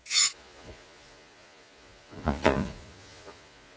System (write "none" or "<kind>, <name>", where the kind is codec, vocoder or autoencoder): vocoder, Vocos